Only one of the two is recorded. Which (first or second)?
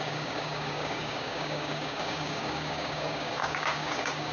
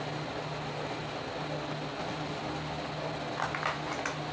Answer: second